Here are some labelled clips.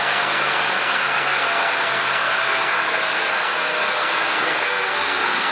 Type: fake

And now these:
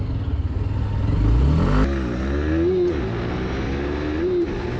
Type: real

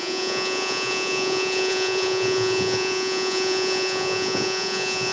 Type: fake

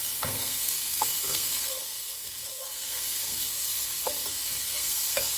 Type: fake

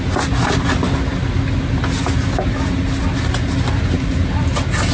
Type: real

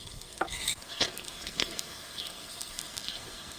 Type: fake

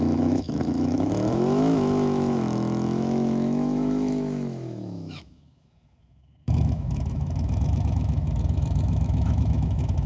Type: fake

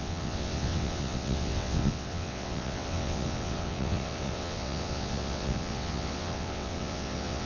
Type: fake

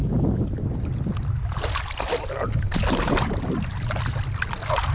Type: real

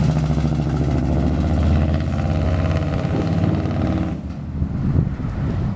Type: real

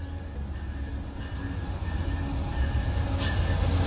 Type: real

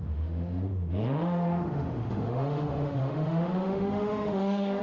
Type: fake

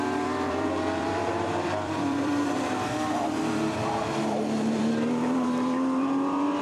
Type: fake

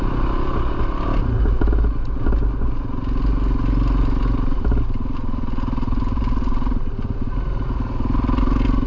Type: real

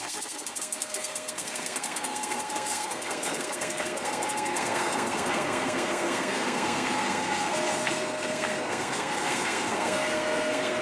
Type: fake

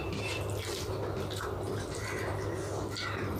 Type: real